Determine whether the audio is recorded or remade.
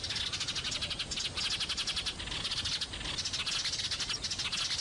recorded